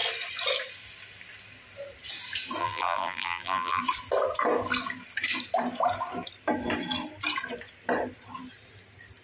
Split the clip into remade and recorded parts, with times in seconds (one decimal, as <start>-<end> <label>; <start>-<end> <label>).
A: 0.0-2.6 recorded; 2.6-3.8 remade; 3.8-9.2 recorded